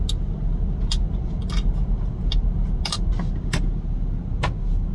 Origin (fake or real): real